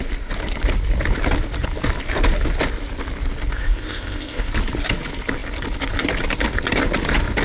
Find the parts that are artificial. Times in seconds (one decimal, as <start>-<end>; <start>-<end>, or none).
3.5-4.5